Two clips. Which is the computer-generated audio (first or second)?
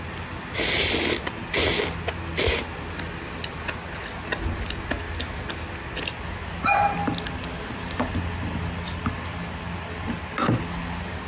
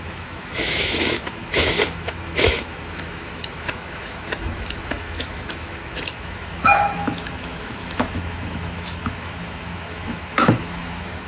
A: second